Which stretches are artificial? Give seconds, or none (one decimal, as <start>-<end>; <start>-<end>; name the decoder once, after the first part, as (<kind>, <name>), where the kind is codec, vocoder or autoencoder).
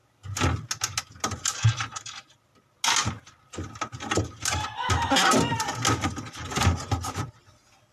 none